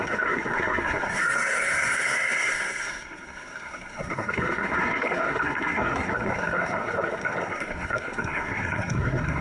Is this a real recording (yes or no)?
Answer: no